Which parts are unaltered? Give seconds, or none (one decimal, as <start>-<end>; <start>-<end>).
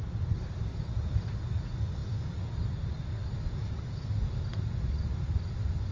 0.0-5.9